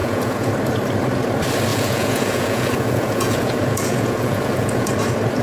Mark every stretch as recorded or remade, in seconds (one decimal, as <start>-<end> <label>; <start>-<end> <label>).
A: 0.0-0.5 remade; 0.5-1.7 recorded; 1.7-4.9 remade; 4.9-5.4 recorded